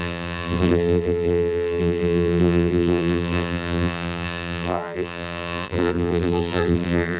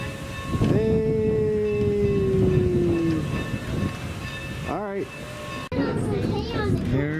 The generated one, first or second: first